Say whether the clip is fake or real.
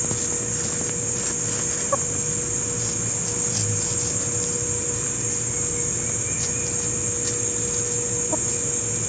real